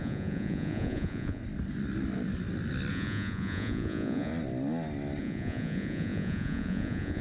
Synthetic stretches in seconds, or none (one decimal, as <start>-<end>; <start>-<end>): 0.0-1.4; 2.9-4.3; 5.2-7.2